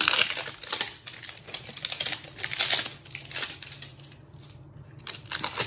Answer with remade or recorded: recorded